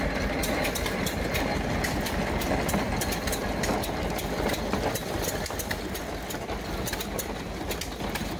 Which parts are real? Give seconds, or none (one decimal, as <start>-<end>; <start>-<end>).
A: 0.0-8.4